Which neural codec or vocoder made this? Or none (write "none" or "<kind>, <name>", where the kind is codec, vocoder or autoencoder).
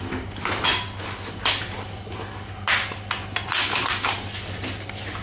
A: none